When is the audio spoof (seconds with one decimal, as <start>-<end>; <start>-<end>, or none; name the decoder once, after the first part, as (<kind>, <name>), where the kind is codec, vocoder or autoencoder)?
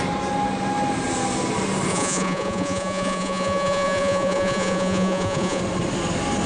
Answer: 1.9-5.6 (vocoder, Vocos)